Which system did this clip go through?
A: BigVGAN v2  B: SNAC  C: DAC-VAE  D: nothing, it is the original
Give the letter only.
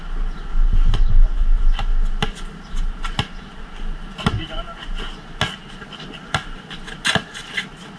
D